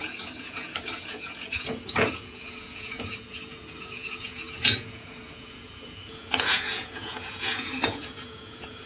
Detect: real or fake fake